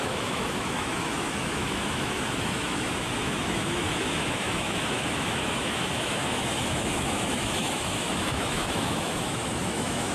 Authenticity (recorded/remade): remade